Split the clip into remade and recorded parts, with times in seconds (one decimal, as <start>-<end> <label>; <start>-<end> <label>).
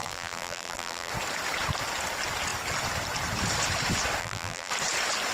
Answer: 0.0-1.1 remade; 1.1-4.2 recorded; 4.2-4.7 remade; 4.7-5.3 recorded